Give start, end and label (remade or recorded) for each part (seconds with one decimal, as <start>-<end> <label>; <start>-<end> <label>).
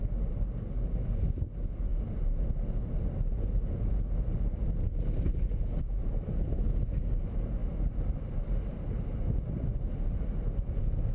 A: 0.0-11.1 recorded